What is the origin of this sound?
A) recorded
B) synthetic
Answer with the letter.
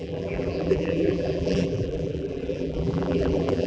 B